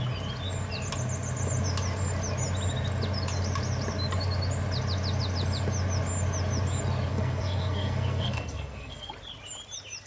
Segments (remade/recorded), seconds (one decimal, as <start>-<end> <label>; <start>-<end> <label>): 0.0-7.1 recorded; 7.1-9.1 remade; 9.1-10.1 recorded